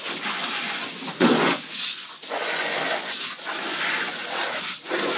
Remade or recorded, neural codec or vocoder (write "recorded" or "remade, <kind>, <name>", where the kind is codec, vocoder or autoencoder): remade, vocoder, Vocos